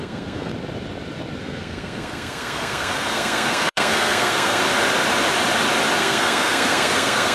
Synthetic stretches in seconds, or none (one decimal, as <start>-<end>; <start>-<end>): 0.0-0.5; 1.4-4.6; 6.0-7.3